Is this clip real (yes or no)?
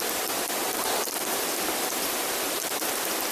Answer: yes